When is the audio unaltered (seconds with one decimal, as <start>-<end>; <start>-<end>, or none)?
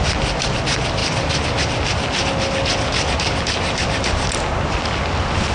0.0-5.5